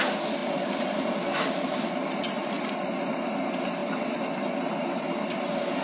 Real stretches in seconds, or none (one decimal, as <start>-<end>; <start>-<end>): 0.0-5.8